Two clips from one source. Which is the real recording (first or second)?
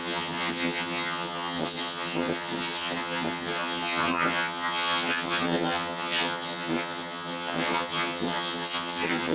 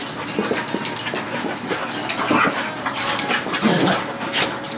second